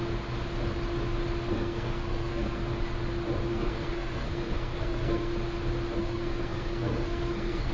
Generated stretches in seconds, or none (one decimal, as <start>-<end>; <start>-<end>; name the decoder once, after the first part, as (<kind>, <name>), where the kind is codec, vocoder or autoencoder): 1.5-2.6 (codec, SNAC); 3.5-5.4; 6.0-7.7

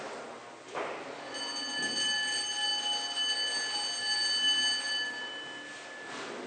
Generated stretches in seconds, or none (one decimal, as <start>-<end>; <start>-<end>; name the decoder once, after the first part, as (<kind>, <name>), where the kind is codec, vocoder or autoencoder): none

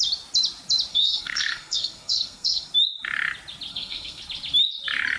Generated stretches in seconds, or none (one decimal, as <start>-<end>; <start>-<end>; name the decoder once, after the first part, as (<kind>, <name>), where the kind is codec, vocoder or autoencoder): 0.9-2.7 (codec, SNAC); 3.7-4.2

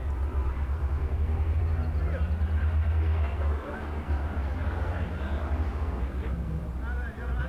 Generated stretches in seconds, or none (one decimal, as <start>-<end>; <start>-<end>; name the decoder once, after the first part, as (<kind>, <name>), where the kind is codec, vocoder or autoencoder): 0.5-1.6 (codec, SNAC); 2.8-5.3; 5.7-6.6

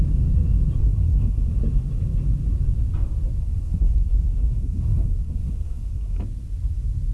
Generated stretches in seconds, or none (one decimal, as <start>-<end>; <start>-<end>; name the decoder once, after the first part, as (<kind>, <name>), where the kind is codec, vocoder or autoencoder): 0.8-1.5 (codec, SNAC); 3.4-6.2